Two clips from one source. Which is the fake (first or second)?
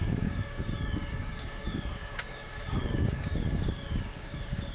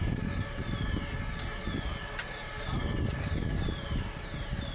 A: first